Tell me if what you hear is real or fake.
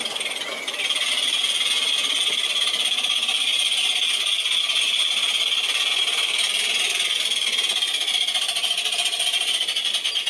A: real